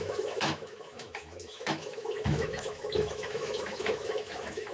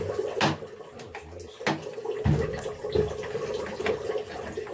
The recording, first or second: second